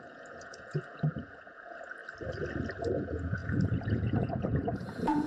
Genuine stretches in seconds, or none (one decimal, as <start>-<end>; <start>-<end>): 2.0-2.8